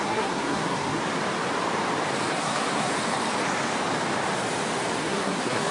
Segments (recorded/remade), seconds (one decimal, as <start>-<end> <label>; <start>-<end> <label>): 0.0-1.0 remade; 1.0-2.3 recorded; 2.3-2.9 remade; 2.9-5.0 recorded; 5.0-5.7 remade